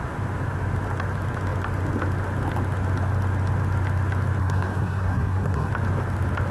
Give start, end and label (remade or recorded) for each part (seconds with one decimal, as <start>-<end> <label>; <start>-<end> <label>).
0.0-4.4 recorded; 4.4-5.7 remade; 5.7-6.5 recorded

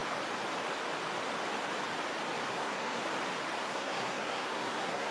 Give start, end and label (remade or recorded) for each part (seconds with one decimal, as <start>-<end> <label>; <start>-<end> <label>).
0.0-2.5 recorded; 2.5-3.0 remade; 3.0-3.6 recorded; 3.6-5.1 remade

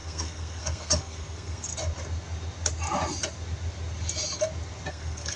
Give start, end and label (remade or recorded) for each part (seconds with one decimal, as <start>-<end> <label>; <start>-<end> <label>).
0.0-1.7 remade; 1.7-4.9 recorded; 4.9-5.4 remade

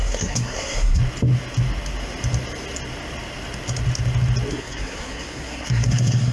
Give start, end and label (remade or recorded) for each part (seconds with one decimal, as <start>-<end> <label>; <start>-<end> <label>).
0.0-1.0 remade; 1.0-4.5 recorded; 4.5-6.3 remade

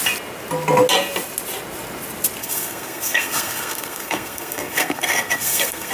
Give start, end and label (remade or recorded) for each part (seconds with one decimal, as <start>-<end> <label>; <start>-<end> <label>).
0.0-2.4 recorded; 2.4-5.9 remade

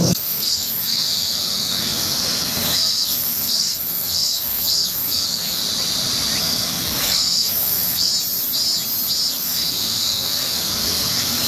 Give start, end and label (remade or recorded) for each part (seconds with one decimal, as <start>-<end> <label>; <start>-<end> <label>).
0.0-5.6 remade; 5.6-6.4 recorded; 6.4-8.1 remade; 8.1-9.3 recorded; 9.3-11.5 remade